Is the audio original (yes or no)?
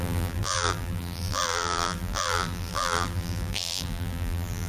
no